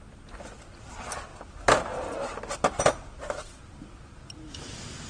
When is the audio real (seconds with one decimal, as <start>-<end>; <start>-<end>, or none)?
0.0-5.1